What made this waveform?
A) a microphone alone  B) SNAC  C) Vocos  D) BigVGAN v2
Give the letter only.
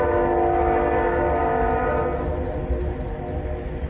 A